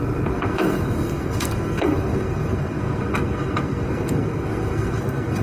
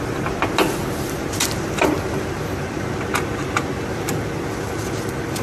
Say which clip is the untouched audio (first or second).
second